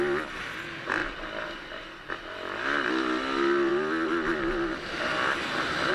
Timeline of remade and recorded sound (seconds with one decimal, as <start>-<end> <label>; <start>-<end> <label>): 0.0-5.9 recorded